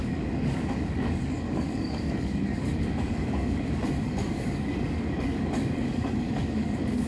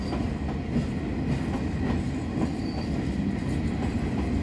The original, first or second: second